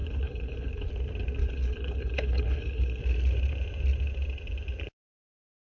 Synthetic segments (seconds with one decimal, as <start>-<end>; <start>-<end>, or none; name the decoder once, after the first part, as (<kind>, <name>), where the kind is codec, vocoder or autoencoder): 0.0-0.9 (codec, HILCodec); 1.4-3.0